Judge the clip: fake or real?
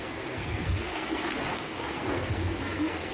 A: fake